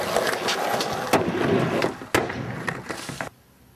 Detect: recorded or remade recorded